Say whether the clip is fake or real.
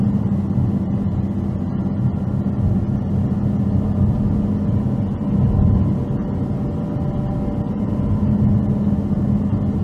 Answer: real